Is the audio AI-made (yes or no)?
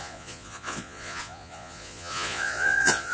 yes